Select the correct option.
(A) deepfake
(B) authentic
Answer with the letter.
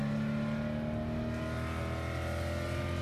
B